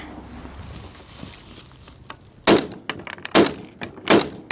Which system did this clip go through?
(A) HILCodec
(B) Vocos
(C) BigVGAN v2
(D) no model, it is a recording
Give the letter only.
D